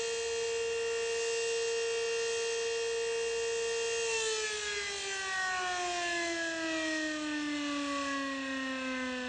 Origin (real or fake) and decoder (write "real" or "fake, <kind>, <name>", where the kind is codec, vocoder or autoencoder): real